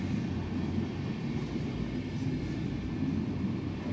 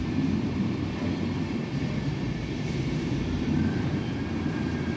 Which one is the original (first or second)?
first